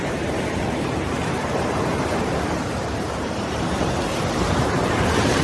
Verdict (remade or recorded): remade